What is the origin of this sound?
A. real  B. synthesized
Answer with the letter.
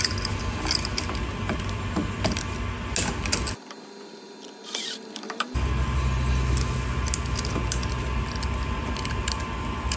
A